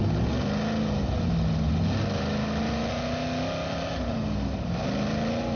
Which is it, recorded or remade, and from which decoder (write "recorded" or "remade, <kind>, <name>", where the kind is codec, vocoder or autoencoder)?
recorded